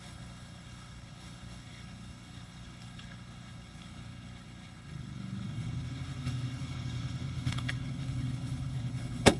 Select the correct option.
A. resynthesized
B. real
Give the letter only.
A